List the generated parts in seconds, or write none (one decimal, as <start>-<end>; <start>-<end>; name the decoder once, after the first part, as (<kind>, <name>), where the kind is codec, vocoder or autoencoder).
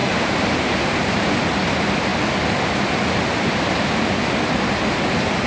0.0-1.3 (vocoder, BigVGAN v2)